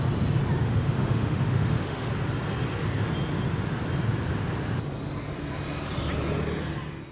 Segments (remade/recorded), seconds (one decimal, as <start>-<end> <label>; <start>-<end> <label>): 0.0-0.6 recorded; 0.6-2.1 remade; 2.1-7.1 recorded